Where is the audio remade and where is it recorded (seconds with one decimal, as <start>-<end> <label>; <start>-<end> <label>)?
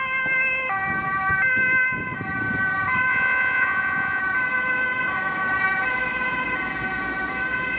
0.0-3.1 recorded; 3.1-4.2 remade; 4.2-7.8 recorded